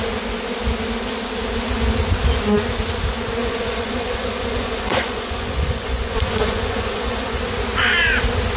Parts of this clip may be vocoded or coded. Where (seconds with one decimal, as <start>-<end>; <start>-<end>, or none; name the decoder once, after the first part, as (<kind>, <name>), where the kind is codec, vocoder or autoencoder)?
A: 3.4-7.4 (vocoder, Vocos)